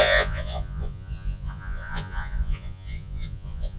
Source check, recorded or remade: remade